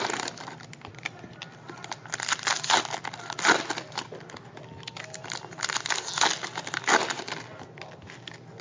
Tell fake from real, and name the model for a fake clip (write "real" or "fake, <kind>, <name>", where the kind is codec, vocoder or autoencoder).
real